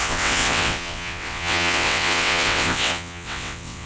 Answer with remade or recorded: remade